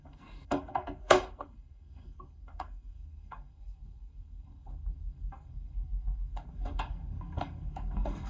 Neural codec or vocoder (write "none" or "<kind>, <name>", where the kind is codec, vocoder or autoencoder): codec, SNAC